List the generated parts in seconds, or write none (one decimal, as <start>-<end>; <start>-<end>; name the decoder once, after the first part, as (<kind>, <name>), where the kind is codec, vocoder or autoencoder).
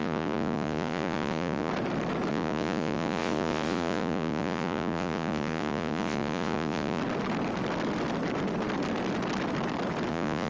0.0-1.7 (vocoder, Vocos); 2.3-7.0; 10.1-10.5